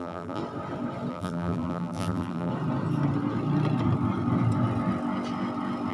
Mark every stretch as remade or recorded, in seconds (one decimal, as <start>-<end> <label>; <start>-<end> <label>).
0.0-0.4 remade; 0.4-1.1 recorded; 1.1-2.5 remade; 2.5-5.9 recorded